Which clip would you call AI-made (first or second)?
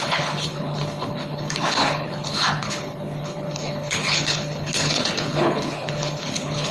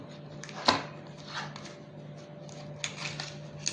first